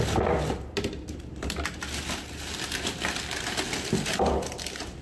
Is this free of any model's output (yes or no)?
yes